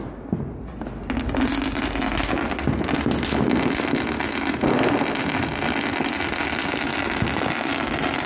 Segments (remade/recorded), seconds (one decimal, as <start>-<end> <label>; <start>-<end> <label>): 0.0-8.3 recorded